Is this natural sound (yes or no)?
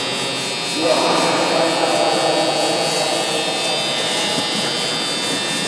yes